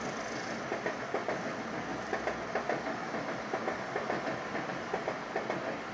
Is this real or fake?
real